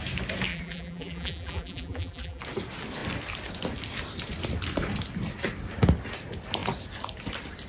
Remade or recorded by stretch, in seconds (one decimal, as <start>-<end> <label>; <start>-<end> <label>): 0.0-0.5 recorded; 0.5-2.4 remade; 2.4-7.7 recorded